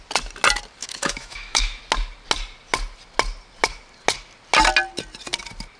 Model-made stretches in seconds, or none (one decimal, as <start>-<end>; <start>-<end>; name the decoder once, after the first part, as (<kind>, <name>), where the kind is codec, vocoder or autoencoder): 0.8-1.8 (autoencoder, DAC-VAE)